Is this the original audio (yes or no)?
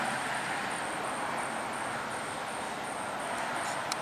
yes